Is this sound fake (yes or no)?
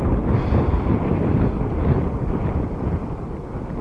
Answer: no